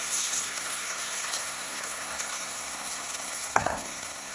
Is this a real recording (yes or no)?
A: no